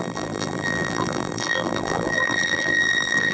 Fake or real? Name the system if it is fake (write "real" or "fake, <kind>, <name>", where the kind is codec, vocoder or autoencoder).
fake, vocoder, BigVGAN v2